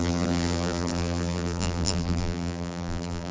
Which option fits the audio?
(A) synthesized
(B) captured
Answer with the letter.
A